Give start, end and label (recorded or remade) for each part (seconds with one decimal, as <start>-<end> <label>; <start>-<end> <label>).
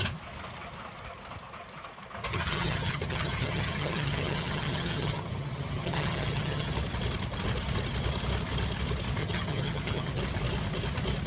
0.0-2.3 recorded; 2.3-6.7 remade; 6.7-9.2 recorded; 9.2-10.2 remade; 10.2-11.3 recorded